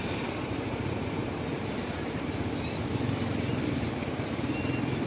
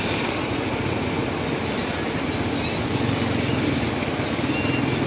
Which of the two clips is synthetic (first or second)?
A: first